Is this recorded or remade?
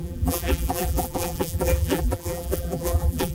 remade